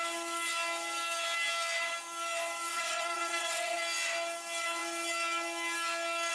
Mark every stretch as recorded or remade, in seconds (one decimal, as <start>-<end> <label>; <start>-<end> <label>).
0.0-2.7 recorded; 2.7-3.8 remade; 3.8-6.3 recorded